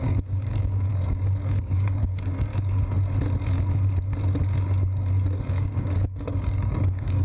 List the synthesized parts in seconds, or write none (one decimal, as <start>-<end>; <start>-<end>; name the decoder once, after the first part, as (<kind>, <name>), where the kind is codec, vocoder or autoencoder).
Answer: 0.0-0.9 (codec, DAC); 1.6-2.5; 5.5-7.2